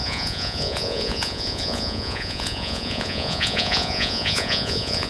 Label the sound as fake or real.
fake